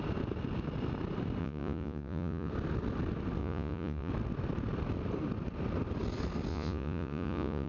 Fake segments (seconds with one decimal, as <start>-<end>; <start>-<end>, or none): 1.4-2.5; 3.4-4.1; 6.5-7.7